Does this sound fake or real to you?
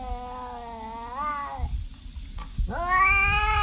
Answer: real